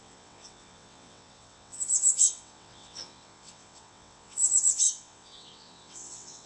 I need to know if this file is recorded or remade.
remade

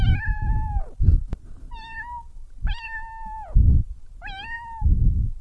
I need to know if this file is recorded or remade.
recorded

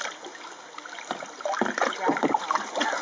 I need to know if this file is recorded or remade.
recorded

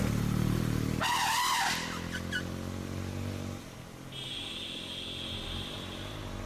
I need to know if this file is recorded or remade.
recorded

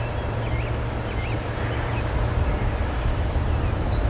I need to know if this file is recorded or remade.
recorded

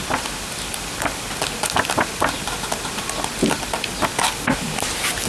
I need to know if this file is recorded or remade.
recorded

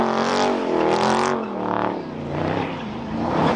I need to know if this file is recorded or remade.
remade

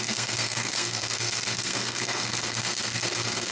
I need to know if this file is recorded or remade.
remade